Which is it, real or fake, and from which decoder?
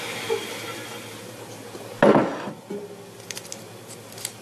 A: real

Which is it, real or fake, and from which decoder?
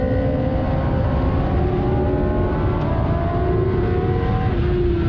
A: real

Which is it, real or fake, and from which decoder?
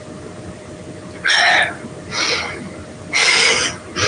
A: real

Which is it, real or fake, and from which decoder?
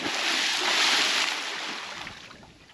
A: real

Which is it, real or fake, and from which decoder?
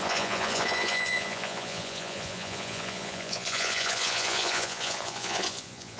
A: fake, vocoder, Vocos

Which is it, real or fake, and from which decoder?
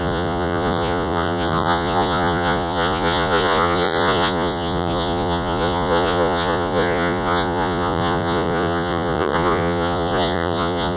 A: fake, vocoder, Vocos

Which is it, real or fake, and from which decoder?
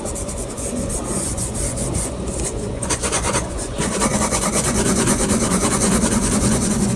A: fake, vocoder, Vocos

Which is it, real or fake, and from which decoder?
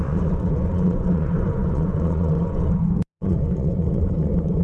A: fake, vocoder, Vocos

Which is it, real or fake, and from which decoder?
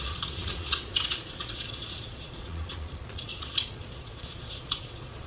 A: fake, vocoder, Vocos